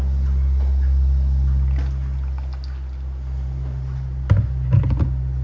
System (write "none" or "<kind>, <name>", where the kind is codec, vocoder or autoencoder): none